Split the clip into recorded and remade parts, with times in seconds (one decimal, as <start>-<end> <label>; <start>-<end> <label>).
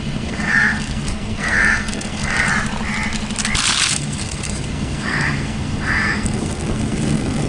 0.0-2.5 remade; 2.5-3.9 recorded; 3.9-7.5 remade